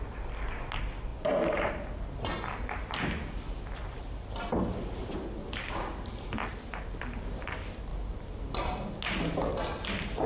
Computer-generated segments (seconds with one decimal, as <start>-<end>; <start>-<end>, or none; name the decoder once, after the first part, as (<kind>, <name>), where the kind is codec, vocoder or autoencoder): none